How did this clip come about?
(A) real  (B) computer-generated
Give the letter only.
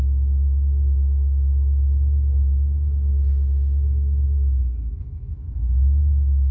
B